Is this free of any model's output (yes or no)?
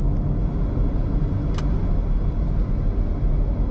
yes